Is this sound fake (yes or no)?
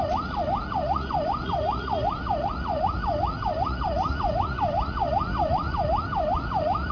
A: yes